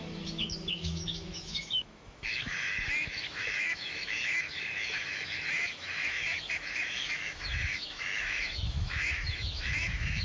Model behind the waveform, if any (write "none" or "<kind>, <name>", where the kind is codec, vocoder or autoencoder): autoencoder, DAC-VAE